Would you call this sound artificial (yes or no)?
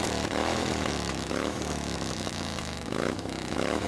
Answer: yes